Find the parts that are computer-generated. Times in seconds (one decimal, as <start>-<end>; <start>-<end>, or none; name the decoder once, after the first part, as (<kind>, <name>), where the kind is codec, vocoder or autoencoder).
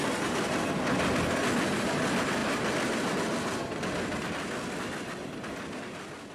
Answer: none